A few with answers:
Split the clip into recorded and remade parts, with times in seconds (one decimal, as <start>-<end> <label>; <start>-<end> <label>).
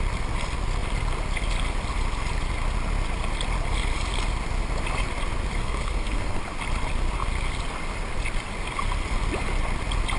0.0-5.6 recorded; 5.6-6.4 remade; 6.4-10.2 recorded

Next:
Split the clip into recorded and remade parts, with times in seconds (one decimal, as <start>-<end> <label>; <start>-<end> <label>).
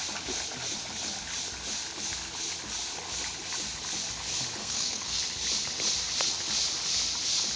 0.0-4.6 recorded; 4.6-5.2 remade; 5.2-7.6 recorded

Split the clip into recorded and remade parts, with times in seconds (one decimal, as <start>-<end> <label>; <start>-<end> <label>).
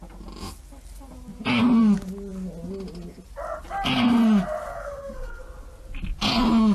0.0-4.7 recorded; 4.7-5.4 remade; 5.4-6.7 recorded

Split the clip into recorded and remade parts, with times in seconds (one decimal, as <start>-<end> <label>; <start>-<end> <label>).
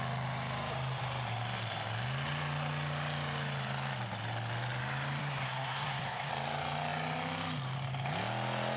0.0-5.2 recorded; 5.2-6.3 remade; 6.3-8.8 recorded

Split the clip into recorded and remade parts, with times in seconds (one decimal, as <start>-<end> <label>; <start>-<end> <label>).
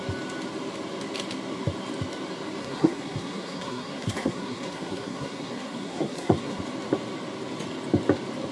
0.0-2.6 recorded; 2.6-6.6 remade; 6.6-8.5 recorded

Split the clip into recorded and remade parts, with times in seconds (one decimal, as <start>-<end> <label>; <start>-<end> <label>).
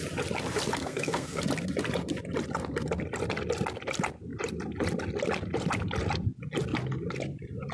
0.0-0.8 recorded; 0.8-1.4 remade; 1.4-7.7 recorded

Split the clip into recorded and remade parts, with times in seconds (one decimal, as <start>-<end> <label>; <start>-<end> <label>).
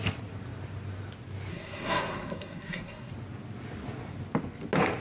0.0-1.5 recorded; 1.5-3.1 remade; 3.1-5.0 recorded